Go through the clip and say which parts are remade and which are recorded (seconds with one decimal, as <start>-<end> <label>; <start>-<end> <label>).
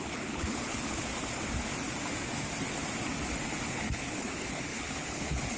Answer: 0.0-1.1 remade; 1.1-3.6 recorded; 3.6-5.6 remade